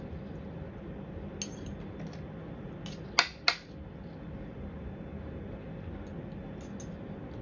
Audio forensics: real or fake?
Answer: real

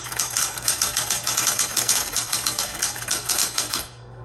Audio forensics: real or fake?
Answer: fake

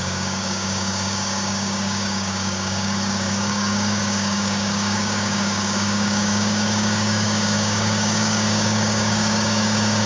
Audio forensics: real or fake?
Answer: fake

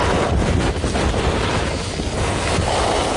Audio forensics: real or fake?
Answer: real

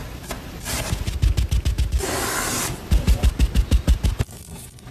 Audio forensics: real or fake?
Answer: real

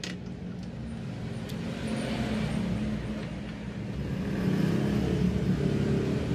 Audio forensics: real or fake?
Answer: real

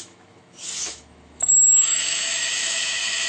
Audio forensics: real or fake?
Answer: fake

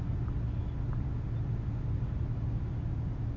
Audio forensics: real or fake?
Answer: real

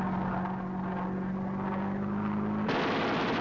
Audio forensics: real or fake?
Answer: real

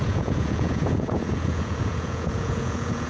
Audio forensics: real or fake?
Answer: fake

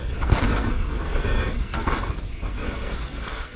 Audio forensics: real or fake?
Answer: fake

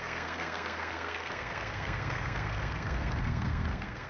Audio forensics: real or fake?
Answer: fake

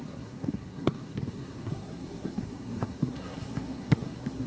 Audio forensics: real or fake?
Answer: fake